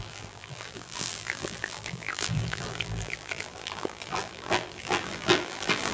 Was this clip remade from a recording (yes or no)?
yes